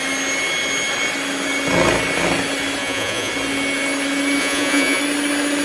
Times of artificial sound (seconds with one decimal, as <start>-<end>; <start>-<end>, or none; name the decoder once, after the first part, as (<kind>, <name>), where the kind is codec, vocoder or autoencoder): 2.8-3.3 (vocoder, Vocos); 4.4-5.0

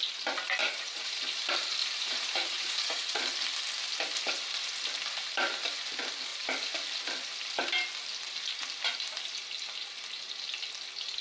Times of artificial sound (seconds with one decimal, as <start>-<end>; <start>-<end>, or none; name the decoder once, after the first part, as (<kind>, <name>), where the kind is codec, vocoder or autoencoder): 0.6-1.2 (vocoder, Vocos); 1.8-3.2